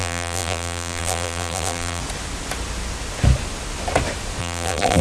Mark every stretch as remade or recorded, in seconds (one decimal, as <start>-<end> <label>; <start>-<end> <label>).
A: 0.0-2.0 remade; 2.0-4.4 recorded; 4.4-5.0 remade